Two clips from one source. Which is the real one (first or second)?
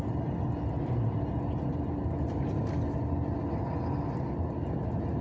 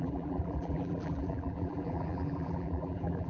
first